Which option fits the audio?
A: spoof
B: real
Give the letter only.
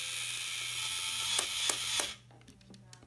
B